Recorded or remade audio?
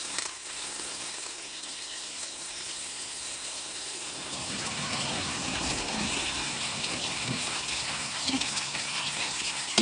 remade